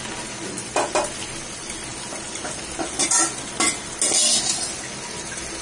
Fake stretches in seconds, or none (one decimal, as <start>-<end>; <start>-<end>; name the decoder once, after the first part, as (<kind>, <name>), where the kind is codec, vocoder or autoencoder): none